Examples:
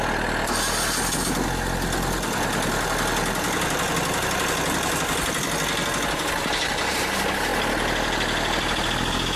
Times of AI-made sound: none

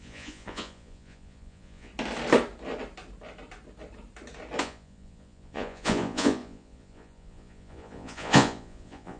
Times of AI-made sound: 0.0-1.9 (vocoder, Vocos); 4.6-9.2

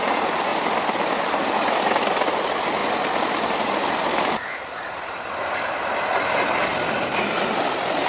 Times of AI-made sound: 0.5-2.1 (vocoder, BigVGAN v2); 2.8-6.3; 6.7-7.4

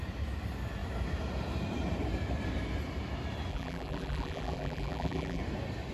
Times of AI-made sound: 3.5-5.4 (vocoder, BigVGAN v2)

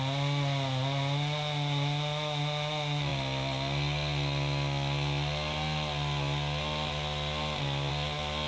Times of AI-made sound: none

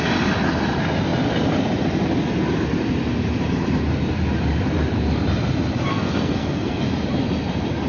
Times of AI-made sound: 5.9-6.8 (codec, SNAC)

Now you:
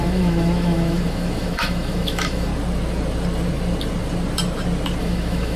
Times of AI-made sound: 0.0-2.5 (autoencoder, DAC-VAE); 5.0-5.6

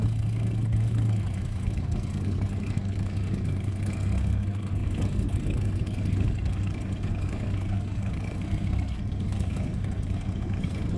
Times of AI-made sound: 0.0-11.0 (codec, SNAC)